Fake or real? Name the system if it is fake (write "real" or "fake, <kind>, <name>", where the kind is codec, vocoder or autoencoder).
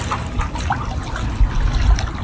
real